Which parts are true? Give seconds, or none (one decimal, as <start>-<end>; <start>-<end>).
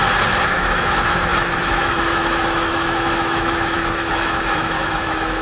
0.0-0.5